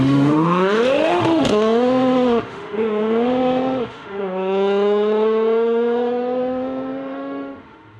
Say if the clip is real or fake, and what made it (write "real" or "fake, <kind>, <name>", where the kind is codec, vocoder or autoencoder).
fake, autoencoder, DAC-VAE